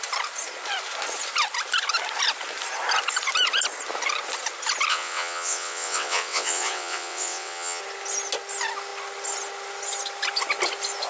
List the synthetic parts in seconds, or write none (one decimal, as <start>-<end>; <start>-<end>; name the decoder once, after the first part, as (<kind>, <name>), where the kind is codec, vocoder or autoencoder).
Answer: 4.9-7.8 (vocoder, WaveNeXt)